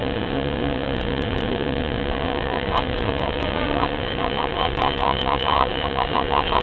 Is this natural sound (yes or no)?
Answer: no